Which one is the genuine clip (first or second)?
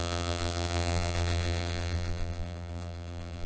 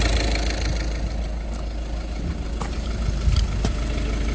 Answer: second